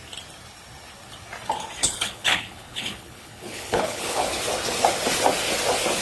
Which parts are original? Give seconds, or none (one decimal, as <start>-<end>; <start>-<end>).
0.0-1.8; 4.3-6.0